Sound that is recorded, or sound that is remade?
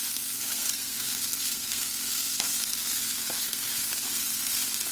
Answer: remade